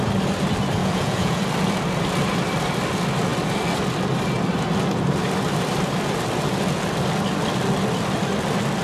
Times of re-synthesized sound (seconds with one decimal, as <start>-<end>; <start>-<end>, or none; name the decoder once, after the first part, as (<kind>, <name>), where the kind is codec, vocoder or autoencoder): 0.8-1.4 (vocoder, Vocos)